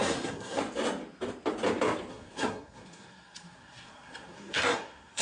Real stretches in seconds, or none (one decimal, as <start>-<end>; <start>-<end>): 0.6-2.1